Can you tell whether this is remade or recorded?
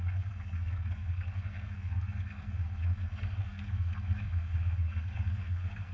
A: remade